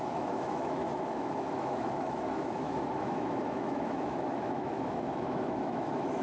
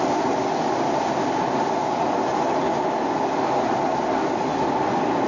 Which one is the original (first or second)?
second